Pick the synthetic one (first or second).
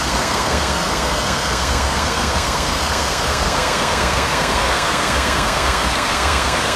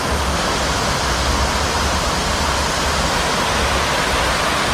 first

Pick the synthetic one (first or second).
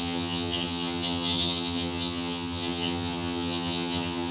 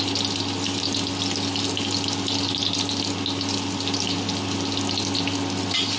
first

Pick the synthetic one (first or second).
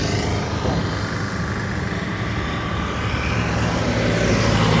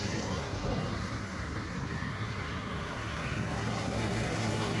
second